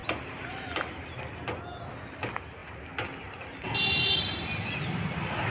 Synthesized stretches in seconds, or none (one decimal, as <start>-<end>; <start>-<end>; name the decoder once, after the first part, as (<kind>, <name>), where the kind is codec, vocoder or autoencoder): none